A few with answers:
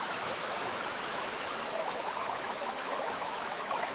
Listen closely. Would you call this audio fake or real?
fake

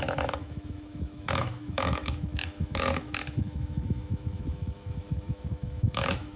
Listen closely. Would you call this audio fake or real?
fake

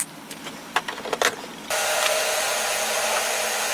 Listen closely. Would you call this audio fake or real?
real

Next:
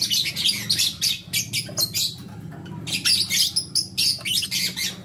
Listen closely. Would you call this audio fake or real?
real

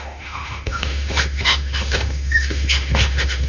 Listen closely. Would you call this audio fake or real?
fake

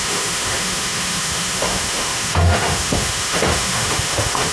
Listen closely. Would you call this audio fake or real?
fake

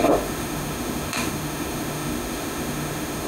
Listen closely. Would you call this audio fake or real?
fake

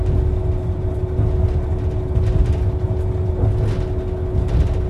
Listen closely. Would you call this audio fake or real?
real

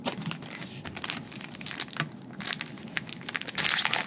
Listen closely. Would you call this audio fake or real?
real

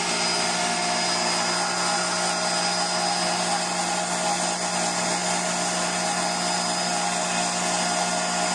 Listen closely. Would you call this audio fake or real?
real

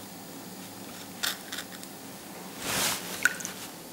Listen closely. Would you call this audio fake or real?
real